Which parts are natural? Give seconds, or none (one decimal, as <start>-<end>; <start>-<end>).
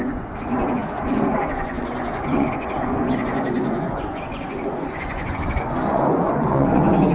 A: none